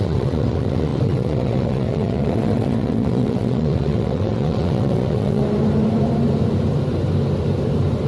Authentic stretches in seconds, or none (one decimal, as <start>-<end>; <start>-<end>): 5.4-8.1